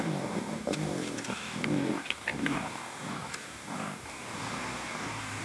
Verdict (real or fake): fake